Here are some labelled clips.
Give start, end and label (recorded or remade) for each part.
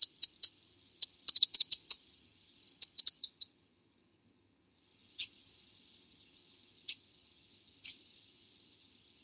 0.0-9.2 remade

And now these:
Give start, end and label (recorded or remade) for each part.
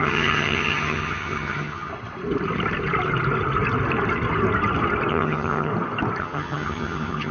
0.0-1.9 remade; 1.9-5.1 recorded; 5.1-5.7 remade; 5.7-6.2 recorded; 6.2-7.3 remade